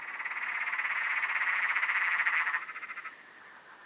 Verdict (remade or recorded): recorded